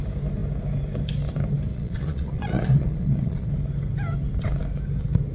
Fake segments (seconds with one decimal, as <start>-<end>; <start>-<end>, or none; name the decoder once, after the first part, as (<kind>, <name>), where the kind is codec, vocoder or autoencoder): 1.7-3.5 (vocoder, Vocos)

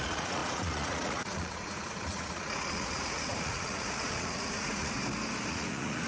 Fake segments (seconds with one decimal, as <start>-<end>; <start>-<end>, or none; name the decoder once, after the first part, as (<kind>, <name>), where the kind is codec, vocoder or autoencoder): 0.0-5.0 (vocoder, Vocos); 5.5-6.1

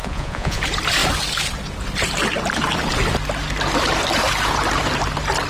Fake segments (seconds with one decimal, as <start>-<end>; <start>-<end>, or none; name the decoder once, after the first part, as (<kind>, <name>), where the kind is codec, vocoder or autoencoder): 0.0-0.6 (vocoder, Vocos)

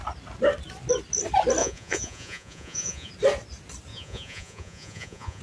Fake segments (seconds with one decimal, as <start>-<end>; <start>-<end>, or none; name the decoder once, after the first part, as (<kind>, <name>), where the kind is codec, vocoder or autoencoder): 1.6-3.1 (vocoder, Vocos); 3.9-5.4

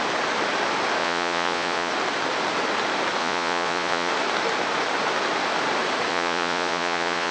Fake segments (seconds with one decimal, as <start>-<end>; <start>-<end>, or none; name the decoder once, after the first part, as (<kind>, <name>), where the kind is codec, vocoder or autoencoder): 1.0-1.9 (vocoder, Vocos); 3.2-4.1; 6.1-7.3

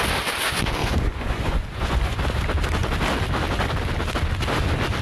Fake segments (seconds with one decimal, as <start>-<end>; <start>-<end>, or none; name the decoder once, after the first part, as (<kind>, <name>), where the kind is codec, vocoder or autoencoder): 0.8-2.2 (vocoder, Vocos)

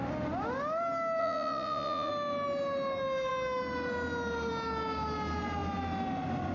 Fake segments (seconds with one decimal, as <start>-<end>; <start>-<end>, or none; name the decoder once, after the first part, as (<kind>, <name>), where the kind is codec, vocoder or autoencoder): 1.2-2.1 (vocoder, Vocos)

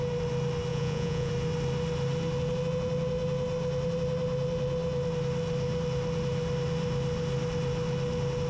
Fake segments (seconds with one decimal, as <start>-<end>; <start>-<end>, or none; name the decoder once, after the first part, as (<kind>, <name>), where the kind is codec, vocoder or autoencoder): 0.7-1.3 (vocoder, Vocos)